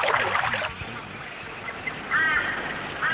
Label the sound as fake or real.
real